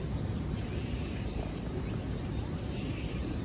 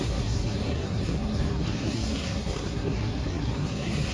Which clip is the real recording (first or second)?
first